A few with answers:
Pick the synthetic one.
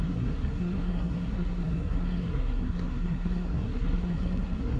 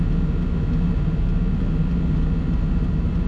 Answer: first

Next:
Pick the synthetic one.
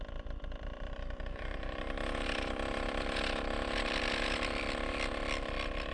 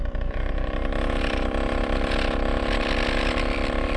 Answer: first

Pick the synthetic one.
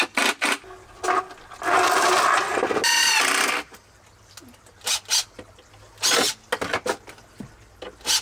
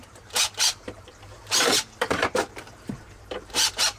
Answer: second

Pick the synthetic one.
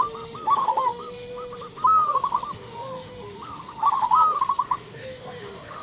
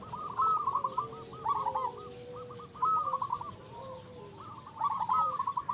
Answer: first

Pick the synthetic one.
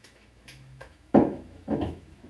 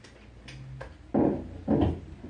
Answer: first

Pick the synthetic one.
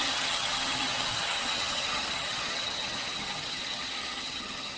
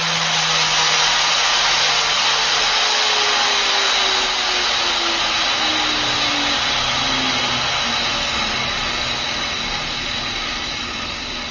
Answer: first